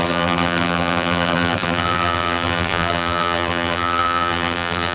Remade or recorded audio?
remade